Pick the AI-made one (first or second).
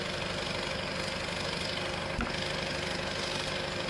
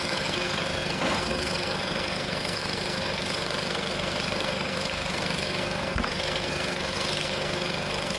second